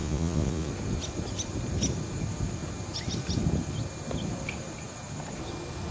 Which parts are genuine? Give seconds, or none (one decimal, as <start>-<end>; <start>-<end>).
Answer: 0.7-5.9